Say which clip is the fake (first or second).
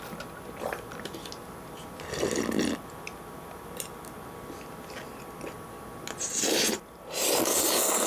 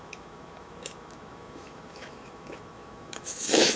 second